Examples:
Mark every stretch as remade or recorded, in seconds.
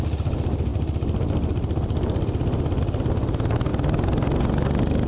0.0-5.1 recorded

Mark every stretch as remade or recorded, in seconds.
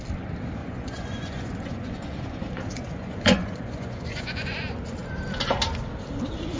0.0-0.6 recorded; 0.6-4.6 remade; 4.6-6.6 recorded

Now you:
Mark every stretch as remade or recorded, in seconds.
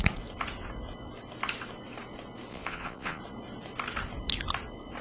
0.0-2.5 recorded; 2.5-3.2 remade; 3.2-5.0 recorded